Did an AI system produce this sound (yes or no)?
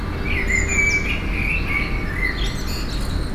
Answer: no